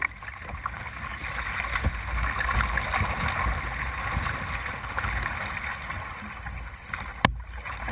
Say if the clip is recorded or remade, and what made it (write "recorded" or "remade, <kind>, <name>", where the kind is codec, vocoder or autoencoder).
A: recorded